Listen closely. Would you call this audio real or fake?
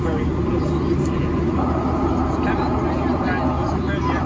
real